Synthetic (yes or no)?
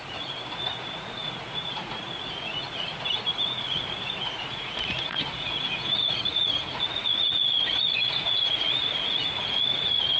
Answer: yes